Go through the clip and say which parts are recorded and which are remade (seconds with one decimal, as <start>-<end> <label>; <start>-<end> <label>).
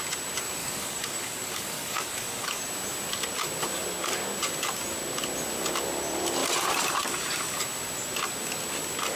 0.0-0.6 recorded; 0.6-2.6 remade; 2.6-9.2 recorded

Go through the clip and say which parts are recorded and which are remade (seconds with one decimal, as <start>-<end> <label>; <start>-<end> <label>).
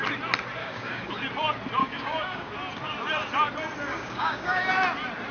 0.0-0.6 recorded; 0.6-1.1 remade; 1.1-1.8 recorded; 1.8-2.5 remade; 2.5-3.9 recorded; 3.9-4.7 remade; 4.7-5.3 recorded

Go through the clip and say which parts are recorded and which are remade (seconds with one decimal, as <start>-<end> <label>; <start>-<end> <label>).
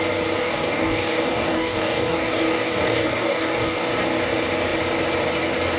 0.0-0.4 recorded; 0.4-3.9 remade; 3.9-5.8 recorded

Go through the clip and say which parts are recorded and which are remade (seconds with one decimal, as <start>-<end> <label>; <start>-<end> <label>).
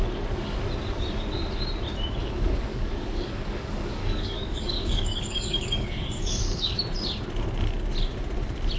0.0-2.2 recorded; 2.2-6.8 remade; 6.8-8.8 recorded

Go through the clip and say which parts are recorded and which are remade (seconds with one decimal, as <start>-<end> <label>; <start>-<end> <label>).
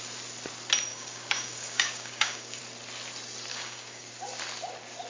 0.0-0.9 recorded; 0.9-2.6 remade; 2.6-3.5 recorded; 3.5-4.1 remade; 4.1-5.1 recorded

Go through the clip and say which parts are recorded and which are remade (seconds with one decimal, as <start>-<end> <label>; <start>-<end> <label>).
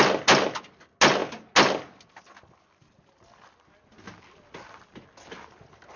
0.0-6.0 recorded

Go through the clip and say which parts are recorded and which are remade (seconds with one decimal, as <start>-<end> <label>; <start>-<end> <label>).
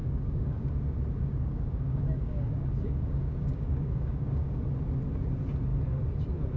0.0-0.7 remade; 0.7-1.3 recorded; 1.3-4.6 remade; 4.6-6.6 recorded